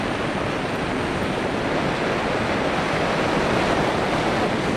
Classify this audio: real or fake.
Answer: real